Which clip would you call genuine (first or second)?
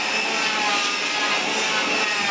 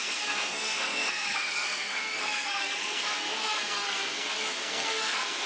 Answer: first